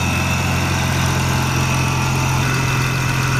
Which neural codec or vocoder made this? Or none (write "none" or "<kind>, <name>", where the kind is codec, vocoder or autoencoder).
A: none